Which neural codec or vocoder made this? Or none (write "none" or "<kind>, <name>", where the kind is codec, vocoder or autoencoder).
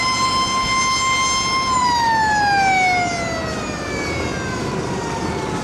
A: none